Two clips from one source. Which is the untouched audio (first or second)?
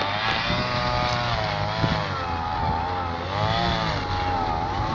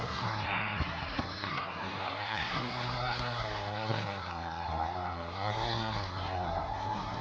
first